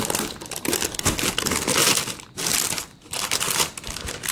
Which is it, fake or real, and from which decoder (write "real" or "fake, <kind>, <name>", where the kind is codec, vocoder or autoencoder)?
real